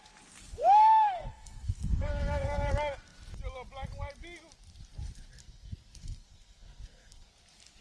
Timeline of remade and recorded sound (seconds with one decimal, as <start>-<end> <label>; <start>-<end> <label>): 0.0-0.6 recorded; 0.6-2.7 remade; 2.7-5.4 recorded; 5.4-7.3 remade; 7.3-7.8 recorded